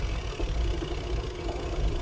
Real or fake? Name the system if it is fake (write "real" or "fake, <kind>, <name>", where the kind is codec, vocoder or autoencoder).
real